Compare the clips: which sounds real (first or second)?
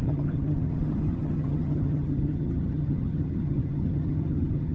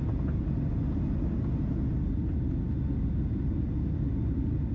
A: second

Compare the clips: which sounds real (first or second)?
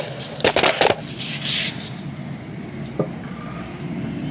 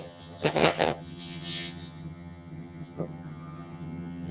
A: first